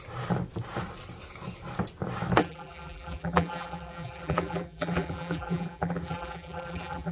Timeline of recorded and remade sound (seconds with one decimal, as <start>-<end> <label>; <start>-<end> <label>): 0.0-2.4 recorded; 2.4-7.1 remade